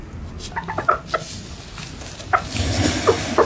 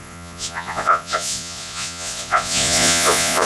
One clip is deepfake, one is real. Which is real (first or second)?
first